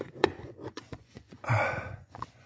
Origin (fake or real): fake